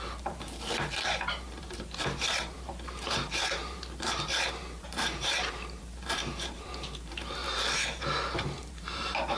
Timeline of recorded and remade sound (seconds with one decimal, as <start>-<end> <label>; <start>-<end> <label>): 0.0-9.4 remade